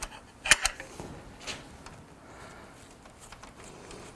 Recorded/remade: recorded